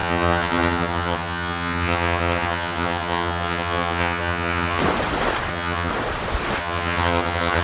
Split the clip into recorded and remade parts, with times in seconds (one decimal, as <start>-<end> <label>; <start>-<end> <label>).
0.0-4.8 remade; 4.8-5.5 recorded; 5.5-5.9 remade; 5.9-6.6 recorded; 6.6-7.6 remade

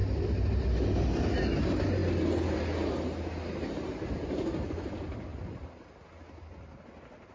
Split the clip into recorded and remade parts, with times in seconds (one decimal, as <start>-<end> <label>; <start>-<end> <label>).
0.0-7.3 recorded

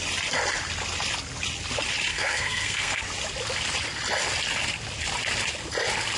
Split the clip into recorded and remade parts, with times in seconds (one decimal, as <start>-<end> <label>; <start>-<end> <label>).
0.0-2.1 recorded; 2.1-3.0 remade; 3.0-6.2 recorded